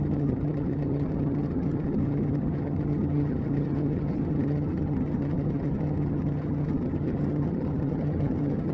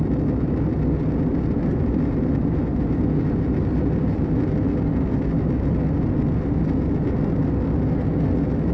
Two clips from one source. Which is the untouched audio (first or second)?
second